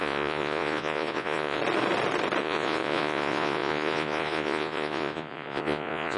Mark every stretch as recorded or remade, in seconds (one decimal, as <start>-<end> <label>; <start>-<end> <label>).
0.0-1.6 remade; 1.6-2.4 recorded; 2.4-6.2 remade